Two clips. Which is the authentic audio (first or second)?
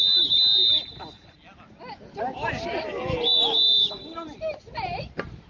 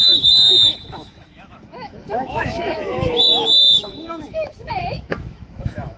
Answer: first